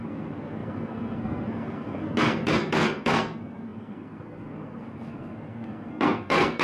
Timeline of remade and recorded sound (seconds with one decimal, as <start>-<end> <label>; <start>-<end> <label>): 0.0-6.6 remade